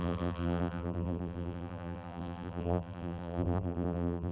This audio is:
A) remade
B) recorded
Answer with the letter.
A